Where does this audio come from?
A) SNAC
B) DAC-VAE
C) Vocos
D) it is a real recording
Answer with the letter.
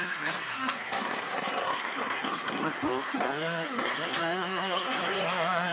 A